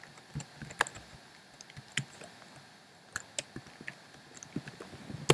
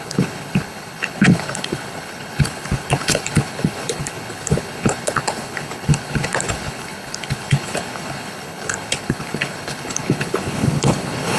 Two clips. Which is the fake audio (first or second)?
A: second